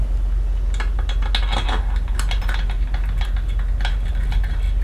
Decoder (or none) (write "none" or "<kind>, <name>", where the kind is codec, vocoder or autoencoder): none